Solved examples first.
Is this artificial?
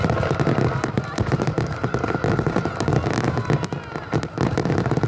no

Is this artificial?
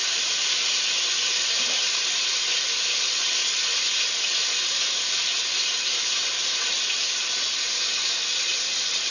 yes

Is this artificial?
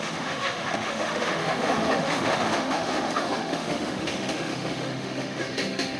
yes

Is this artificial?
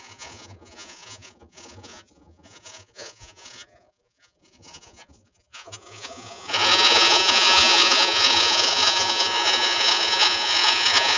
yes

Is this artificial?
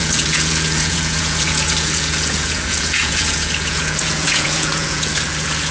yes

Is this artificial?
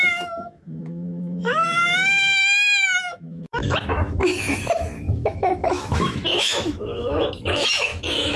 yes